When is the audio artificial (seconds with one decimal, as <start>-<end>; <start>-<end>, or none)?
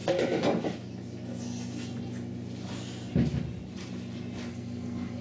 4.5-5.2